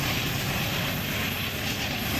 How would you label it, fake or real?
real